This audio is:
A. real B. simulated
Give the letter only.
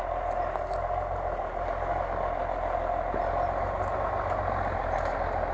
A